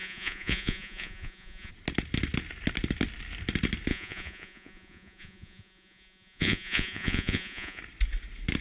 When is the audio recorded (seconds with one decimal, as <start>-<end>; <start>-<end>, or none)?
1.7-3.9; 7.8-8.6